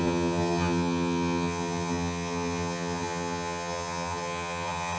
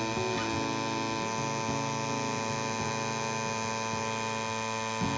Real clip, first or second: second